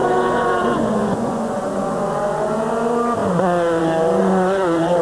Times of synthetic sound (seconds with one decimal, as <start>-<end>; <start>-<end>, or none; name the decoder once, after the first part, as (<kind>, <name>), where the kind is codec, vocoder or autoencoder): 0.0-2.5 (vocoder, Vocos); 4.2-5.0